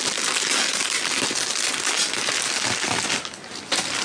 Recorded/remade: recorded